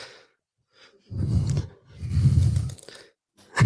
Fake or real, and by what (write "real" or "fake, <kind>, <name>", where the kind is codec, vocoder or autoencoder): real